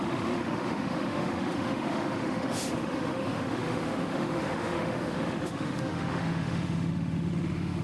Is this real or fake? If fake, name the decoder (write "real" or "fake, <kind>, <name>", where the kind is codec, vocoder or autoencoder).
fake, autoencoder, DAC-VAE